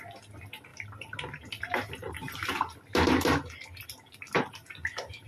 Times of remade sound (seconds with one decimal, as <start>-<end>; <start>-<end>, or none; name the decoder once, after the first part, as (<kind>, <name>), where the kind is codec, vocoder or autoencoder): none